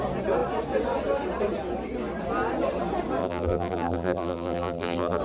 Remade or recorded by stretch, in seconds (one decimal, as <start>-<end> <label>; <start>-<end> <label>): 0.0-3.2 recorded; 3.2-5.2 remade